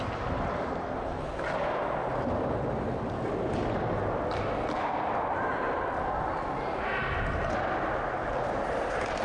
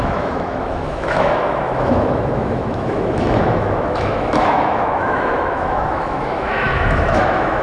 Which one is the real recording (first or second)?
first